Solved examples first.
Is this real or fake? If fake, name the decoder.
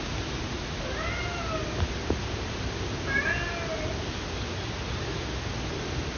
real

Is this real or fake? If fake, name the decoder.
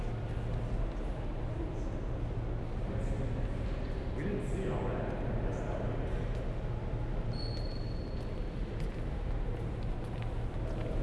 real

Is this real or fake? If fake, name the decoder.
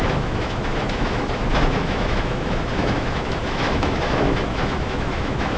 fake, autoencoder, DAC-VAE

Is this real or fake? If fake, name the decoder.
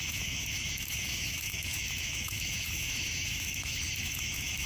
fake, autoencoder, DAC-VAE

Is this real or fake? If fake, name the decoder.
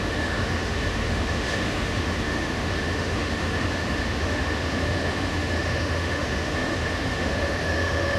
fake, autoencoder, DAC-VAE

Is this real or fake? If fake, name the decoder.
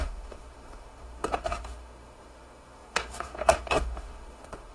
fake, autoencoder, DAC-VAE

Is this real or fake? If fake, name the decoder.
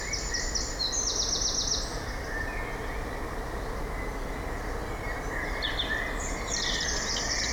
real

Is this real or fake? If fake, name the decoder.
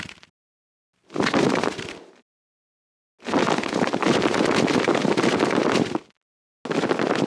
real